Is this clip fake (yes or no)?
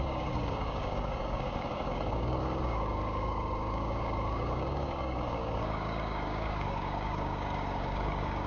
yes